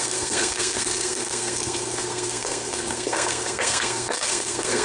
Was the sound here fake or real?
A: fake